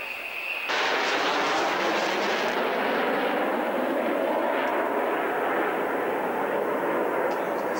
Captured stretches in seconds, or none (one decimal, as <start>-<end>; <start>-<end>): 0.0-7.8